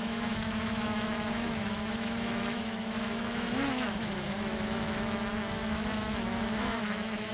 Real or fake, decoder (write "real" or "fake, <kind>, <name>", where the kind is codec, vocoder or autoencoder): fake, autoencoder, DAC-VAE